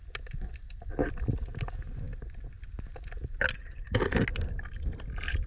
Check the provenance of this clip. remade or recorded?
recorded